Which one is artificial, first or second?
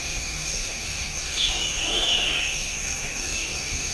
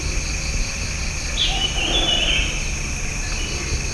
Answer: first